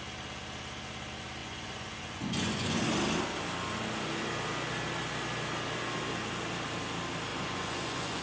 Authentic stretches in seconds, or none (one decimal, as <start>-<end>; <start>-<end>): 0.0-1.4; 2.8-7.3

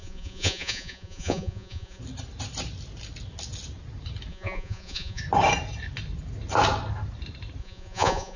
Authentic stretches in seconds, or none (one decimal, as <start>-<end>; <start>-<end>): 2.0-4.3; 5.2-7.6

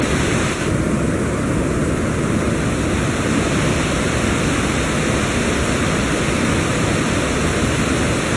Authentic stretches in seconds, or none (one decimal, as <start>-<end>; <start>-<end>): 0.0-8.4

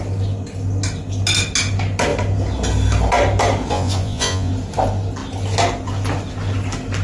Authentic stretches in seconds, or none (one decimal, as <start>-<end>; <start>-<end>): 0.0-3.7; 4.5-7.0

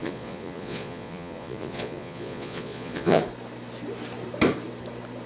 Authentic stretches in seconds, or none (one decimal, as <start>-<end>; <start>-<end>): 3.2-5.3